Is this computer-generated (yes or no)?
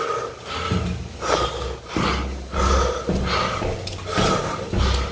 no